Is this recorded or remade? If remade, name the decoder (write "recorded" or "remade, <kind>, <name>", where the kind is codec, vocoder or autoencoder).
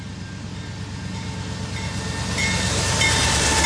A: recorded